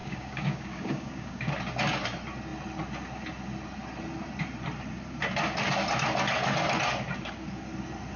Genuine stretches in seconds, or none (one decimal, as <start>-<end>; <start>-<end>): 1.5-8.2